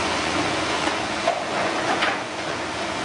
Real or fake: fake